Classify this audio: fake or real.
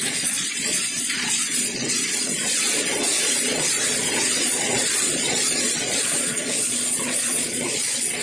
fake